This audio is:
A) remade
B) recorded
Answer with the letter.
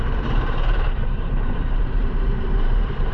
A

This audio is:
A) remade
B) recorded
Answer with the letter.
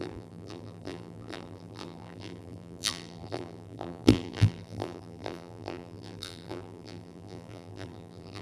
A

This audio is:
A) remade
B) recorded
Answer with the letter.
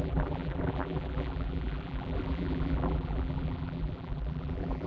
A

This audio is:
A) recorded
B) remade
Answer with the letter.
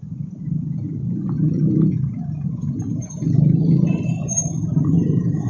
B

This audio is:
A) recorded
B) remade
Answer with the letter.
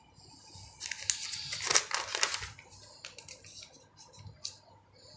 A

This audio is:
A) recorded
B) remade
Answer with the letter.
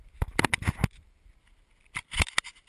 A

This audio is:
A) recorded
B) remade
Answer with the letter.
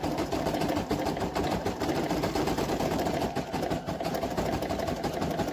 B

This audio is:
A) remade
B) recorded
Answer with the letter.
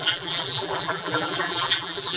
A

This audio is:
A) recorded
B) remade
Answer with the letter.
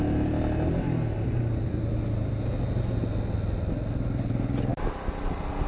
A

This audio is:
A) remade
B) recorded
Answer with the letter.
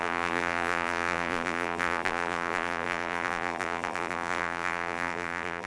A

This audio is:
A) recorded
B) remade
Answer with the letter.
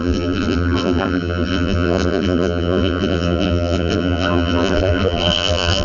B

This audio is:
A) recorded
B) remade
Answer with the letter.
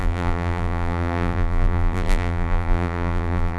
B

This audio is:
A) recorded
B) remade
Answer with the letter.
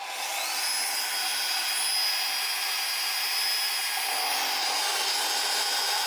A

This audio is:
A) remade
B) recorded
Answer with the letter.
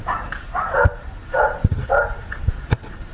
A